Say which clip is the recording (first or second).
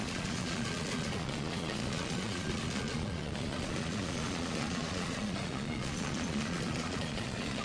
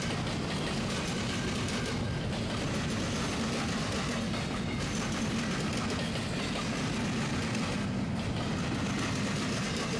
second